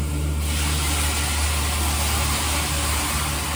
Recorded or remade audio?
recorded